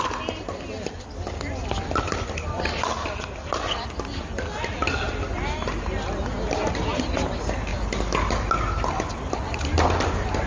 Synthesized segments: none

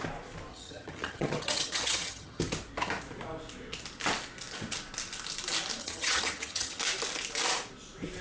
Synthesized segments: 0.5-2.4 (vocoder, HiFi-GAN); 5.8-6.8

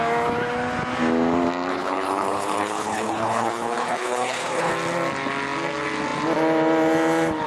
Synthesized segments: 1.7-4.7 (codec, HILCodec)

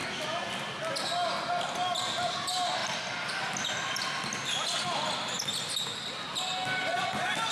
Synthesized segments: none

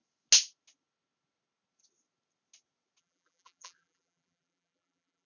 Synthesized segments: 3.0-5.3 (vocoder, BigVGAN v2)